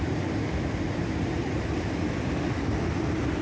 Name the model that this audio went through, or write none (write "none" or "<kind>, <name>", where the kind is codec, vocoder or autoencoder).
none